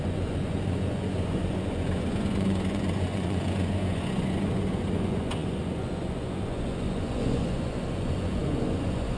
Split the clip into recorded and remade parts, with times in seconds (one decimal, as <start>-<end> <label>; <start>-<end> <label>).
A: 0.0-9.2 remade